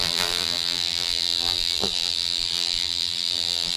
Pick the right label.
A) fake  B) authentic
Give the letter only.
A